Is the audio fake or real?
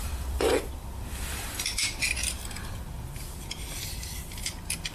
fake